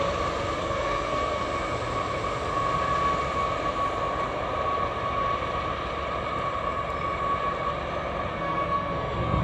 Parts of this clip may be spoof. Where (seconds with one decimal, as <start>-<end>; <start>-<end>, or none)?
0.6-1.4; 8.3-9.4